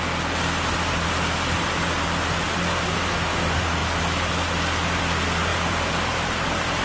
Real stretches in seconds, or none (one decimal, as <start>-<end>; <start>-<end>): 0.0-5.5